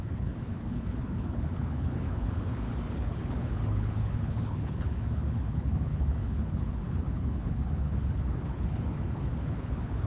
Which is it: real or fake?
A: fake